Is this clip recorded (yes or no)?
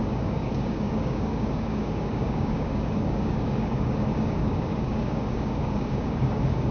no